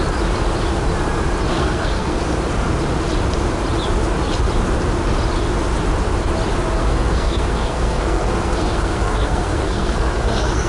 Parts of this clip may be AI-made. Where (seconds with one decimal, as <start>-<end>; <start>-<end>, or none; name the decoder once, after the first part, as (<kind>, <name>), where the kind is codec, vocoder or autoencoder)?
1.5-2.2 (codec, SNAC); 6.8-10.7